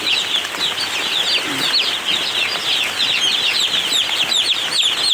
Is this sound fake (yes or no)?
no